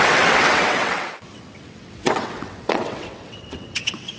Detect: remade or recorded remade